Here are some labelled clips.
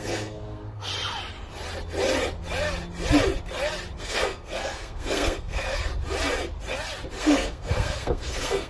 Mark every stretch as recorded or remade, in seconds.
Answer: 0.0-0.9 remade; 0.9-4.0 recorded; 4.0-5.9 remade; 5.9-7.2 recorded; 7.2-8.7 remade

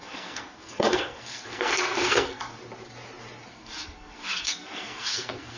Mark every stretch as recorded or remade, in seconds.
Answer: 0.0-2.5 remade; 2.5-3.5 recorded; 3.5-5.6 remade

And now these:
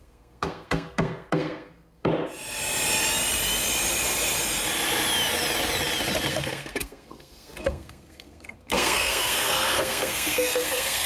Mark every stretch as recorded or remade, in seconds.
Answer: 0.0-2.1 remade; 2.1-6.3 recorded; 6.3-11.1 remade

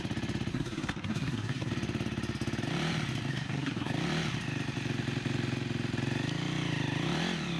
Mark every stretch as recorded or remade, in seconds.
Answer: 0.0-0.5 recorded; 0.5-1.7 remade; 1.7-3.3 recorded; 3.3-3.9 remade; 3.9-7.6 recorded

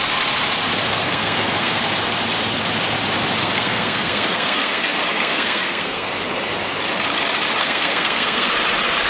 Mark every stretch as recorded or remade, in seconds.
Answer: 0.0-0.9 recorded; 0.9-1.8 remade; 1.8-3.4 recorded; 3.4-6.1 remade; 6.1-7.6 recorded; 7.6-8.5 remade; 8.5-9.1 recorded